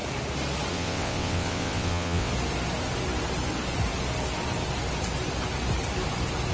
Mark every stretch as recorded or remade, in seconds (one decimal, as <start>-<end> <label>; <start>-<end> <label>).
0.0-0.7 recorded; 0.7-2.3 remade; 2.3-6.5 recorded